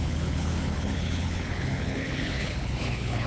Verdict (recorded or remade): remade